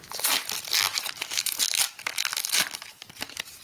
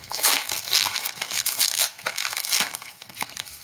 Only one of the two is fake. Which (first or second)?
second